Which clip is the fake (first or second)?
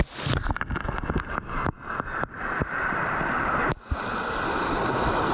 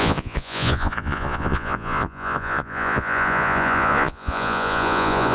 second